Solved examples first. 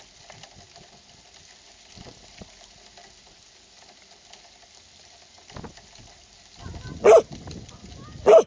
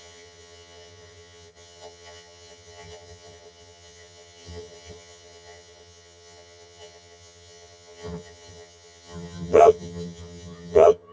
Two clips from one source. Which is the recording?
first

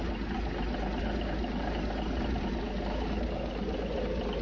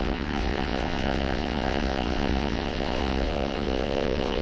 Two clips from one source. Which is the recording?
first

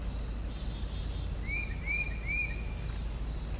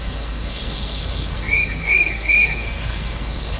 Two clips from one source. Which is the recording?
first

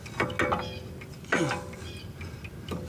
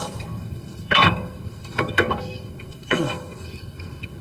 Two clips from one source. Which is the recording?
first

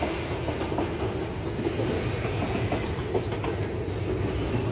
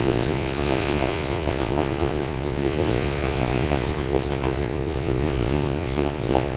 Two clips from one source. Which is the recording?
first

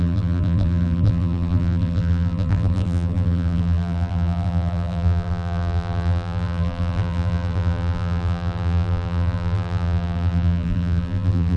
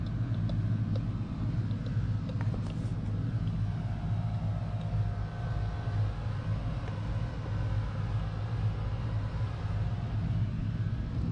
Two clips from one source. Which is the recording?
second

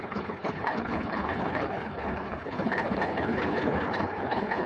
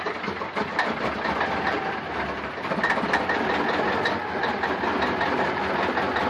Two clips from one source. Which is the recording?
second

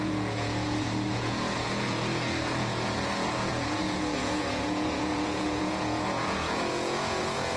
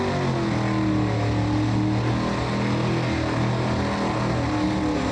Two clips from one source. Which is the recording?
second